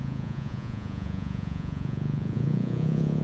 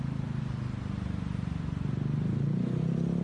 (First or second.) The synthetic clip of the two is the first